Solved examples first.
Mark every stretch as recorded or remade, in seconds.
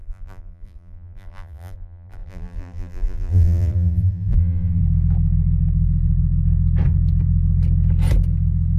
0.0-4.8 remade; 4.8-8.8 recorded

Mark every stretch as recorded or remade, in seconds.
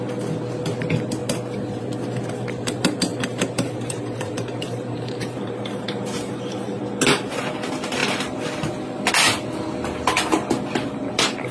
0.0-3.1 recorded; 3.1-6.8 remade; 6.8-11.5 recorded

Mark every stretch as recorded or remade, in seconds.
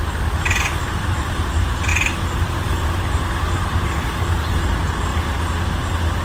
0.0-1.9 recorded; 1.9-4.2 remade; 4.2-6.2 recorded